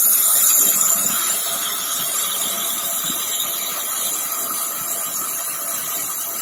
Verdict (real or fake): real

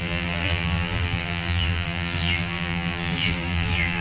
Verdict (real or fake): fake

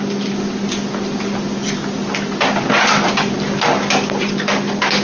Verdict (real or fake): real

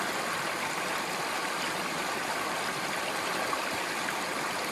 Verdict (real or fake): real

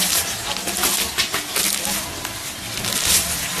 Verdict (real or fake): real